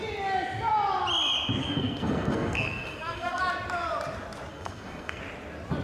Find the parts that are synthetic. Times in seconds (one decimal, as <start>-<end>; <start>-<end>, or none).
1.6-3.4; 4.5-5.2